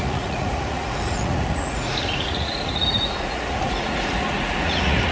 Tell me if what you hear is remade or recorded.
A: remade